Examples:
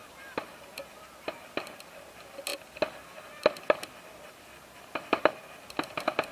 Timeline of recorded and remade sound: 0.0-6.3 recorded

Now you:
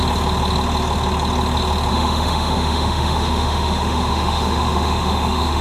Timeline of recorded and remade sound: 0.0-1.9 recorded; 1.9-5.6 remade

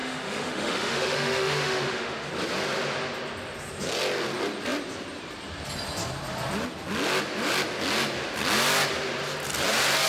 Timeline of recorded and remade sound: 0.0-2.3 remade; 2.3-10.1 recorded

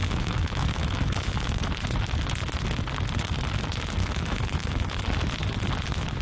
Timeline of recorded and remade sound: 0.0-1.6 remade; 1.6-4.0 recorded; 4.0-5.0 remade; 5.0-6.2 recorded

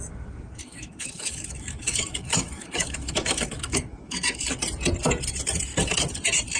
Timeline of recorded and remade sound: 0.0-0.6 recorded; 0.6-4.6 remade; 4.6-6.6 recorded